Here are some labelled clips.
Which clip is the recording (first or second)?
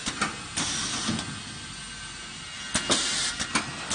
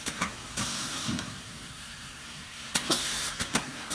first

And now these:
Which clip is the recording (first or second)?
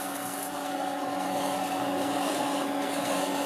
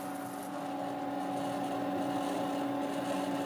second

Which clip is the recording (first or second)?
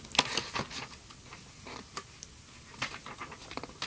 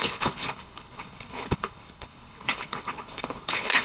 first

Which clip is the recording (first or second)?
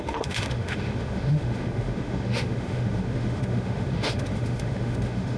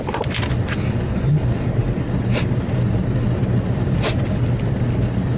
second